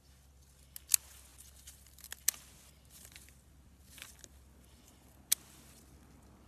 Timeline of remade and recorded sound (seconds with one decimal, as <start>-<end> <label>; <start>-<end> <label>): 0.0-6.5 recorded